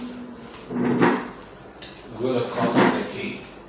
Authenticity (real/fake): real